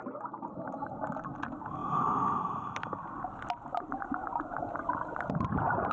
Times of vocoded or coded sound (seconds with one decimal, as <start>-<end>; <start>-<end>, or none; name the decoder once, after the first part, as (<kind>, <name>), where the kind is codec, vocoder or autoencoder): none